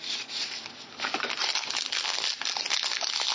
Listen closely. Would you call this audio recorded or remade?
recorded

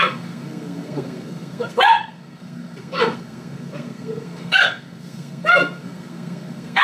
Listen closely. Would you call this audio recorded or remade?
remade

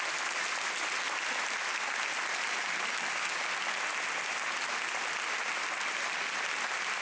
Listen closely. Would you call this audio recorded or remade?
recorded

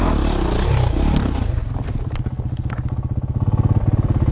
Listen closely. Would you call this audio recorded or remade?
recorded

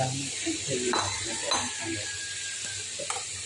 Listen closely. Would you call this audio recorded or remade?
recorded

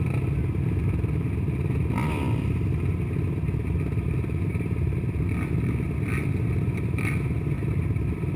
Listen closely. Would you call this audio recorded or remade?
recorded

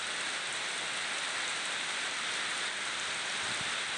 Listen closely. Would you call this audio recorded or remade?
recorded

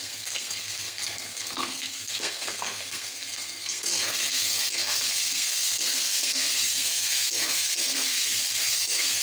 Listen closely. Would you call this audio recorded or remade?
remade